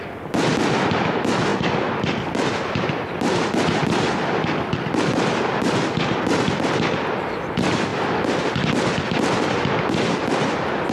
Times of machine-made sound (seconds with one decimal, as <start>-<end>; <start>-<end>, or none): none